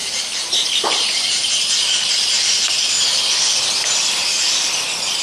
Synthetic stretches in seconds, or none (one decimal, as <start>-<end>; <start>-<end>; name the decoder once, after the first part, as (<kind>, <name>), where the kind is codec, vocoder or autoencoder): 0.0-2.9 (vocoder, BigVGAN v2)